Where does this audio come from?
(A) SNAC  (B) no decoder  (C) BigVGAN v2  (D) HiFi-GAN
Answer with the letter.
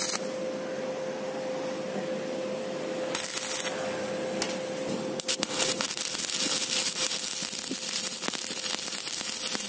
B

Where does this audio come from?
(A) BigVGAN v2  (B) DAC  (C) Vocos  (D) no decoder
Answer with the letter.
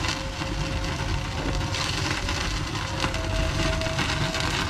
D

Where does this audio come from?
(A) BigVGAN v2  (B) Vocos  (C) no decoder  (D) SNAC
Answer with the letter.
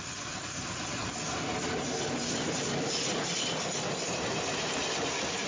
C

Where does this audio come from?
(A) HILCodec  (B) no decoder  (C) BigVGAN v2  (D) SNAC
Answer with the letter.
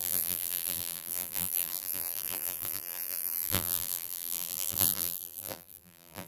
C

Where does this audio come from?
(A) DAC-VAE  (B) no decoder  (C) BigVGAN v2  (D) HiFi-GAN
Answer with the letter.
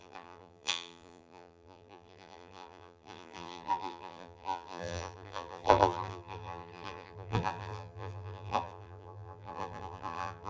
C